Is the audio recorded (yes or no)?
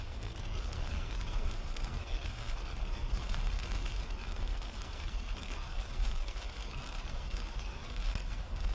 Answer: no